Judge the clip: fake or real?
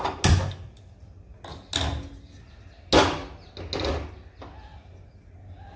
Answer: real